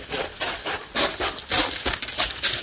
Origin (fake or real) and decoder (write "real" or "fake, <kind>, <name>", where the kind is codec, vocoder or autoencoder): real